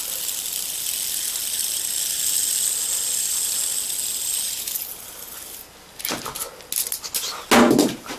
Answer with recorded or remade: recorded